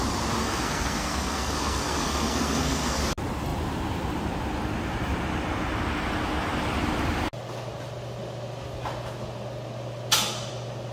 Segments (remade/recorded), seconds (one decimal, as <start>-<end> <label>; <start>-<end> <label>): 0.0-0.4 recorded; 0.4-3.0 remade; 3.0-10.9 recorded